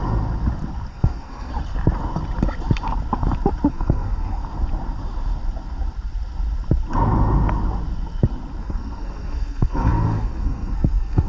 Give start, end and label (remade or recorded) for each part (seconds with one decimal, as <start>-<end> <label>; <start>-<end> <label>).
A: 0.0-0.9 recorded; 0.9-1.5 remade; 1.5-3.7 recorded; 3.7-4.4 remade; 4.4-8.6 recorded; 8.6-11.3 remade